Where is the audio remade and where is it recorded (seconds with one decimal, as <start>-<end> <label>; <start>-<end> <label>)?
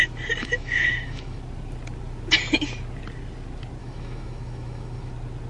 0.0-0.4 recorded; 0.4-1.4 remade; 1.4-3.8 recorded; 3.8-5.1 remade; 5.1-5.5 recorded